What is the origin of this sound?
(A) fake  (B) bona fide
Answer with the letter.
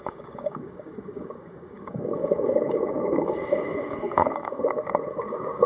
A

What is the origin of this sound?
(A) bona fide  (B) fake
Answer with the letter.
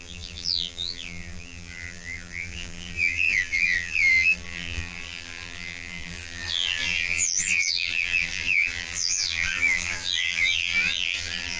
B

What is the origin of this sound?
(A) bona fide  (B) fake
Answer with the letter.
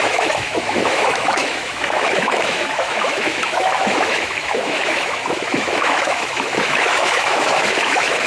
B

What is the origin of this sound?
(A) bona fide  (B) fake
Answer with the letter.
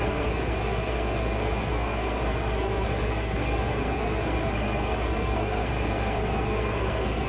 B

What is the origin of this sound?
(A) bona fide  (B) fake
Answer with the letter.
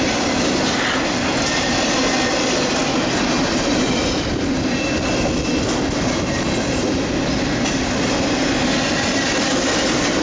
A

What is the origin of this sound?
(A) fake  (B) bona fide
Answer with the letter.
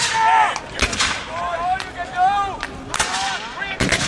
B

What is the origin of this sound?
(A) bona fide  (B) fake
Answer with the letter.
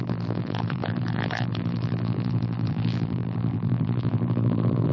B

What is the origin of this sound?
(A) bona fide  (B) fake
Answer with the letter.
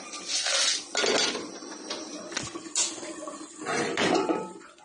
A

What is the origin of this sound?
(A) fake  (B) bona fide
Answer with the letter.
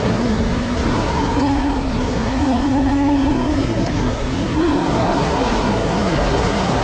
A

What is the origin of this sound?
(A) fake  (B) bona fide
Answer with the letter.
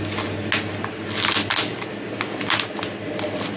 B